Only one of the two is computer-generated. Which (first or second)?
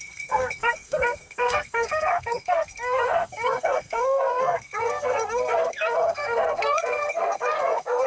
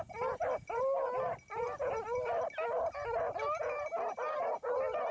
first